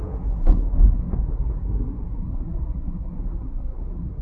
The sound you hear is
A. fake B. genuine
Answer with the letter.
A